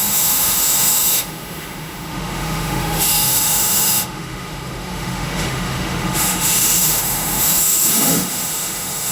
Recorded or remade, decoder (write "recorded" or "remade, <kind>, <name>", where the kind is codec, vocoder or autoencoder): remade, autoencoder, DAC-VAE